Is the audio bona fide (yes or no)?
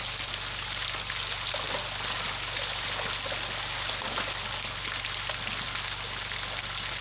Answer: yes